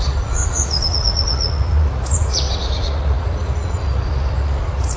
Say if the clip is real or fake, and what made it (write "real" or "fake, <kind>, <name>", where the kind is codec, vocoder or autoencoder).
fake, vocoder, Vocos